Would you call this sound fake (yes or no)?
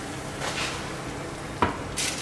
no